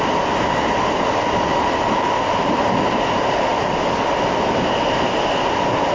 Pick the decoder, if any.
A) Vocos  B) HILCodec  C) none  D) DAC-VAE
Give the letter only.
C